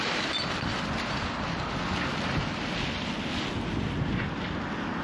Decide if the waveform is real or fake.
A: real